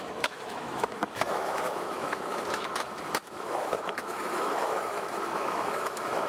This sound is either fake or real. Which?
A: fake